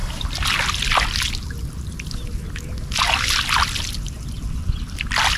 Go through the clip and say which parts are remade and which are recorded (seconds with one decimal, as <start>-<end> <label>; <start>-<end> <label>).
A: 0.0-5.4 recorded